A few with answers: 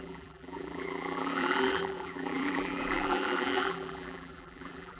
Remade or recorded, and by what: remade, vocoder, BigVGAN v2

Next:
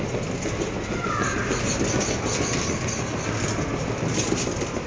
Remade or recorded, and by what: recorded